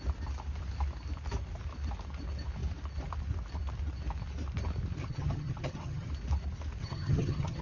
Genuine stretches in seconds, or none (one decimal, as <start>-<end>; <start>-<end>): 0.0-5.0; 6.1-6.8